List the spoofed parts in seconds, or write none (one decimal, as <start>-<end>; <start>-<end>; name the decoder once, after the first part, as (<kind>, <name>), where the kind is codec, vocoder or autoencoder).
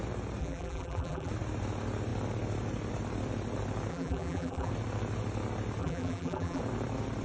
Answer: 0.4-1.3 (vocoder, BigVGAN v2); 3.9-4.7; 5.8-6.6